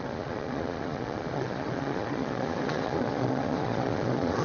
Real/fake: fake